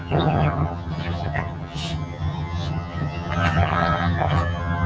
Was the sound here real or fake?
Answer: fake